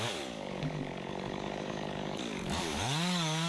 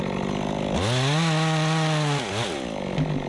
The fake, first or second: first